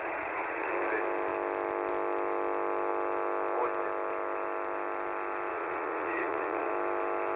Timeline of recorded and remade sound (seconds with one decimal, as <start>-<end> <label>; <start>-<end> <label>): 0.0-0.7 remade; 0.7-5.5 recorded; 5.5-6.7 remade; 6.7-7.4 recorded